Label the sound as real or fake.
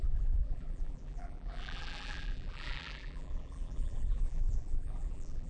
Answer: fake